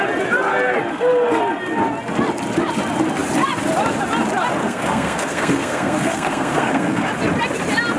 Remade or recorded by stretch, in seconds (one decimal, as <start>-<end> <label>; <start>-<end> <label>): 0.0-0.9 recorded; 0.9-1.4 remade; 1.4-4.6 recorded; 4.6-7.1 remade; 7.1-8.0 recorded